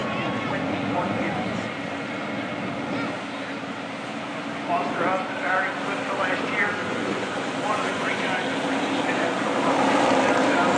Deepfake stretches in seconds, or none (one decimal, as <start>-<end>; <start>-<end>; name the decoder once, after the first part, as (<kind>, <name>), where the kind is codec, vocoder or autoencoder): 0.0-1.7 (vocoder, Vocos); 6.8-8.2